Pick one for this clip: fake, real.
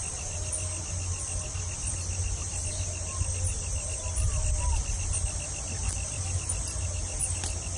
real